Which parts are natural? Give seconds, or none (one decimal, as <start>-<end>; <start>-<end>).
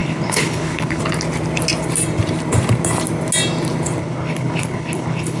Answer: 1.0-4.0